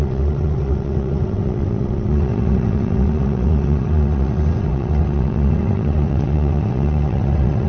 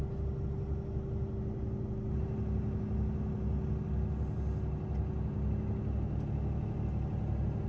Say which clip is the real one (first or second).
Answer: second